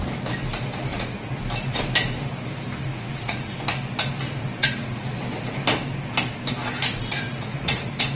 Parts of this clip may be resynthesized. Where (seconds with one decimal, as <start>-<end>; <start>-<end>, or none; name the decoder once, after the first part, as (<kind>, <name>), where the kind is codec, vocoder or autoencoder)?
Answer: 0.9-1.4 (vocoder, Vocos); 2.9-3.5; 4.6-5.2; 7.3-8.1